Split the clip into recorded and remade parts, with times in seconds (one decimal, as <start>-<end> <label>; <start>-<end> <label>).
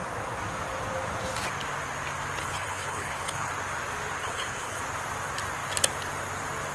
0.0-2.4 recorded; 2.4-3.5 remade; 3.5-4.2 recorded; 4.2-4.8 remade; 4.8-6.7 recorded